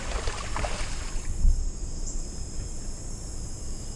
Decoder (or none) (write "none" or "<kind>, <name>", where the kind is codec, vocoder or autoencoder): none